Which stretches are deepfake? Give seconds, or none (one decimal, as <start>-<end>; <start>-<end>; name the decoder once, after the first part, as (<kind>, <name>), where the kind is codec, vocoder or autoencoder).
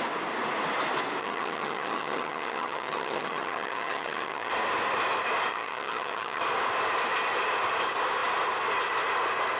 1.2-4.5 (vocoder, HiFi-GAN); 5.5-6.4